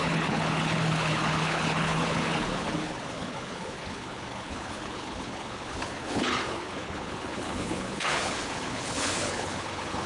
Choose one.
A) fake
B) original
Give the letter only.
A